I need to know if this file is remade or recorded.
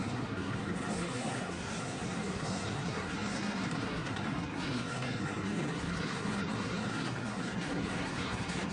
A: remade